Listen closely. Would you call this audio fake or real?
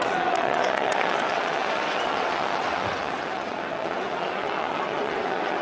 fake